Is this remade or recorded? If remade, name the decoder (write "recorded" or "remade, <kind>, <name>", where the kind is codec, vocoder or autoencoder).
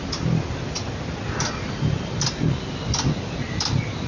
recorded